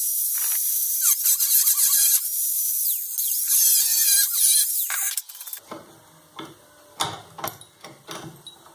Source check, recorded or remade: recorded